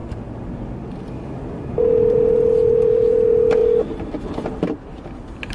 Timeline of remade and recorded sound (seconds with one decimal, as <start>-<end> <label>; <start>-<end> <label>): 0.0-0.8 recorded; 0.8-3.6 remade; 3.6-5.5 recorded